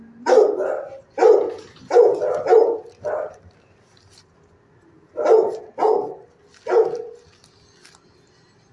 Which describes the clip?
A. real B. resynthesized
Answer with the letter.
A